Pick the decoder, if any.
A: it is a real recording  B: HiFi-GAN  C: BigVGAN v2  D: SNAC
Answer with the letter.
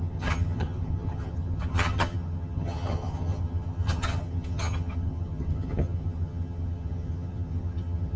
B